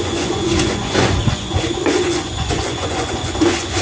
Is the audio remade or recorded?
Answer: remade